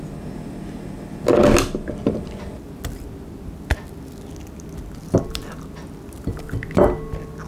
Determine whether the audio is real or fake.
real